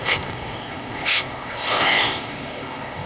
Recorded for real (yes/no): no